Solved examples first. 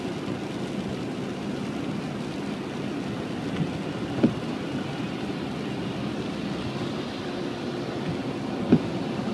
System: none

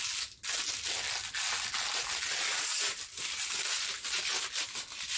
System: none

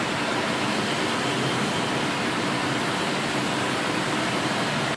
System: none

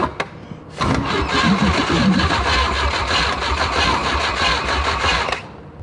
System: none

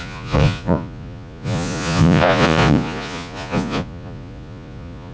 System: vocoder, Vocos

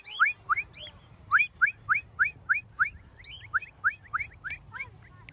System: none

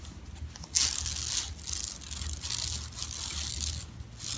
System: none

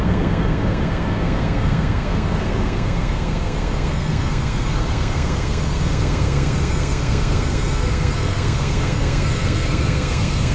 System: codec, SNAC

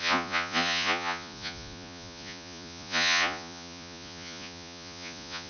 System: vocoder, Vocos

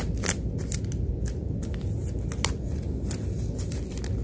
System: none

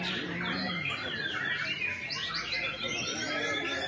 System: none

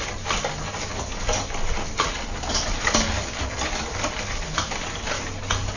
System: none